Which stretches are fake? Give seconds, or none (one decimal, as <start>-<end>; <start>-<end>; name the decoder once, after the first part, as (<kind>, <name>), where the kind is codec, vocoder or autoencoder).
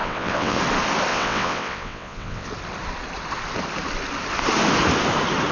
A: 0.0-0.6 (vocoder, WaveNeXt); 1.1-2.5